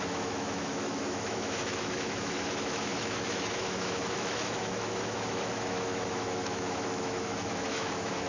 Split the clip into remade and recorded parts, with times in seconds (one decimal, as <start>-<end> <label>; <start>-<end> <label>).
0.0-8.3 remade